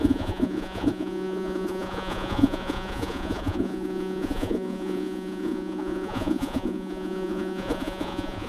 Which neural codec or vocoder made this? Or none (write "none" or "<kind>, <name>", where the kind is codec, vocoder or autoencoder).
vocoder, Vocos